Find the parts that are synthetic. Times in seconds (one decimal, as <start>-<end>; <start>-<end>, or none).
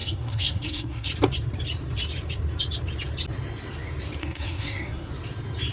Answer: 0.0-1.1; 4.2-5.1